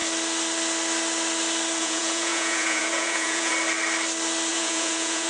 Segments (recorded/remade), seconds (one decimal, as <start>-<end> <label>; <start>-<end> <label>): 0.0-1.8 recorded; 1.8-3.5 remade; 3.5-4.5 recorded; 4.5-5.3 remade